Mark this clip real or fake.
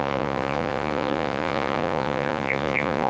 fake